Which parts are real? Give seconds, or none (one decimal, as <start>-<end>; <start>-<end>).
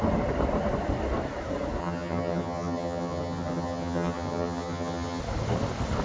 0.0-1.8; 5.2-6.0